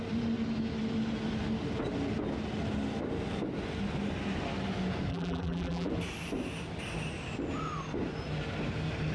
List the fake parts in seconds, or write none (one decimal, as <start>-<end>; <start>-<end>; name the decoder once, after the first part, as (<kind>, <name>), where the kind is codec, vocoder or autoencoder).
5.1-5.9 (vocoder, BigVGAN v2)